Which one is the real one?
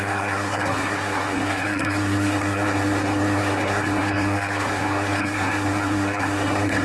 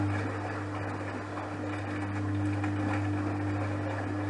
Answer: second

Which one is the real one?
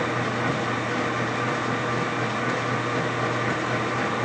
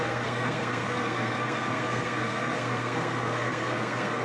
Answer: first